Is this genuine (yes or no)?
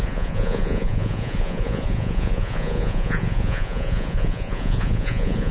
no